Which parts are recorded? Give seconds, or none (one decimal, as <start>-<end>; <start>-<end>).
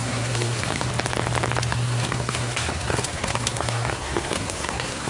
0.9-1.7